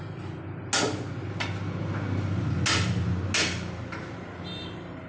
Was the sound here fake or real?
real